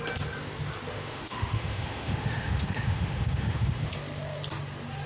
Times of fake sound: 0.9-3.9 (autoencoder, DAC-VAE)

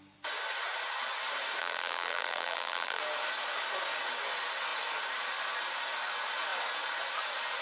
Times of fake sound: 1.6-3.0 (vocoder, BigVGAN v2)

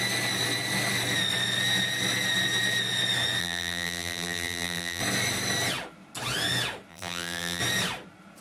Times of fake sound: 3.4-5.0 (vocoder, BigVGAN v2); 6.9-7.6

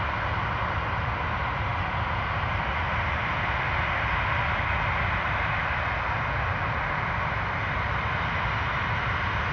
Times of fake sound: none